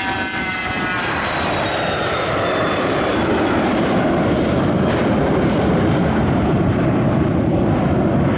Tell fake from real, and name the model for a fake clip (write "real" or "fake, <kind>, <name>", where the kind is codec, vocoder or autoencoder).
fake, vocoder, BigVGAN v2